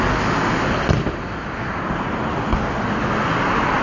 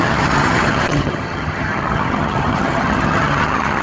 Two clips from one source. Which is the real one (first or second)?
first